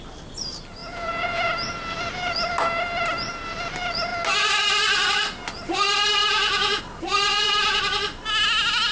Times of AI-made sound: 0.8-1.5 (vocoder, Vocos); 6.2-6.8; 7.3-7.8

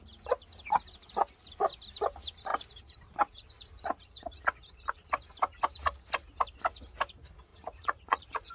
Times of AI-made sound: 7.5-8.5 (vocoder, Vocos)

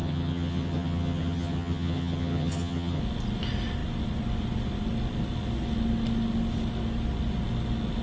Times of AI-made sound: 0.0-3.0 (vocoder, HiFi-GAN)

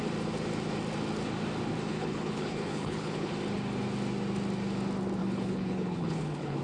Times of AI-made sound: 1.9-3.3 (codec, HILCodec); 5.2-6.6

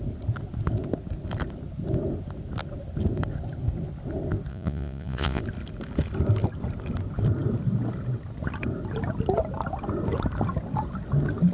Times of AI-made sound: 4.5-5.4 (vocoder, Vocos)

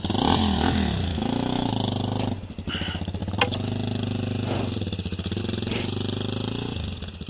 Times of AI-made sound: 1.1-1.7 (autoencoder, DAC-VAE)

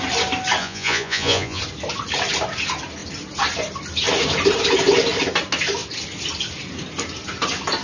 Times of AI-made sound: 0.6-1.6 (vocoder, Vocos)

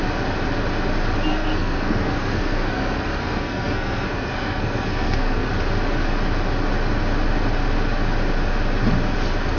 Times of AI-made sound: 1.3-5.5 (codec, SNAC)